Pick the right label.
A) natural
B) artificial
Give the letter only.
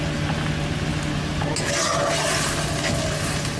A